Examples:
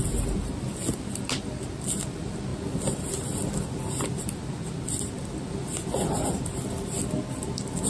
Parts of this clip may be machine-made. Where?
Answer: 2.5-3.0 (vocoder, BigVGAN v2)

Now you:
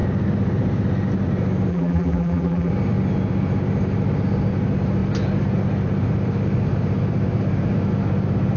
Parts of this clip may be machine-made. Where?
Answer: 1.7-2.7 (vocoder, BigVGAN v2)